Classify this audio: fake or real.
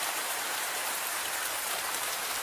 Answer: fake